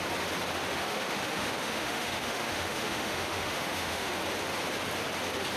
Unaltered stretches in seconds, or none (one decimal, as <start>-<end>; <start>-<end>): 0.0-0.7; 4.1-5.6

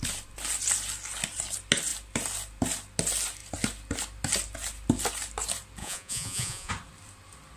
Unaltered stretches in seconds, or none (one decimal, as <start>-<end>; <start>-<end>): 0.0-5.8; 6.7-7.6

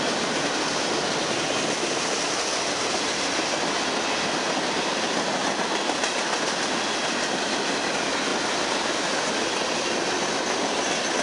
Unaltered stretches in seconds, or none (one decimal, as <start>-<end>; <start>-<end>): 0.0-11.2

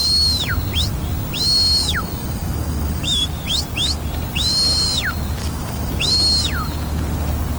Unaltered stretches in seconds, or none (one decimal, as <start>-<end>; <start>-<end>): 0.0-1.8; 3.2-5.4; 5.9-7.6

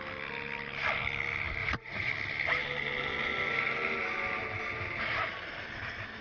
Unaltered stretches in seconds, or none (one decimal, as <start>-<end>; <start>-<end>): 0.0-1.6; 2.1-6.2

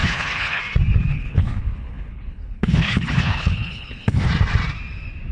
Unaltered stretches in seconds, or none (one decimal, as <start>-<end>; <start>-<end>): 0.6-1.1; 4.3-5.3

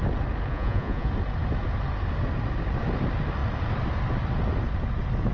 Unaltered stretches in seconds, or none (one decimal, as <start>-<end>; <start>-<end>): 0.0-0.5; 1.1-5.3